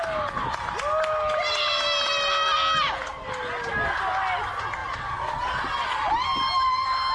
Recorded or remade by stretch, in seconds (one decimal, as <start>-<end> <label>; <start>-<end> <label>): 0.0-7.1 recorded